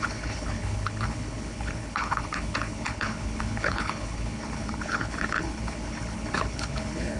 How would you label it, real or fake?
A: fake